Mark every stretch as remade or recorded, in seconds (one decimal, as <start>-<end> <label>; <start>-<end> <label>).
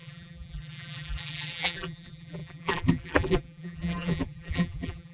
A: 0.0-5.1 remade